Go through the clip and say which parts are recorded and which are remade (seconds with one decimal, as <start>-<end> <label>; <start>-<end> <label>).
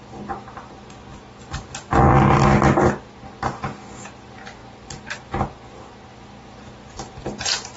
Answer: 0.0-7.8 recorded